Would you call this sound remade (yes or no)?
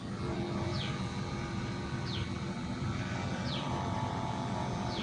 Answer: yes